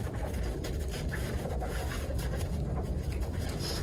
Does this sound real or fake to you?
real